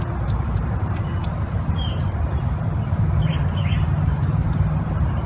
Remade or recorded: remade